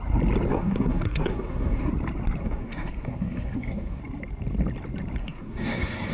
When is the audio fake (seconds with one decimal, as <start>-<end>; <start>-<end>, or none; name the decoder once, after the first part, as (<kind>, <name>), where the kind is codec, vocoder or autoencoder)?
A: 0.5-1.9 (codec, SNAC); 2.4-4.0; 5.2-6.1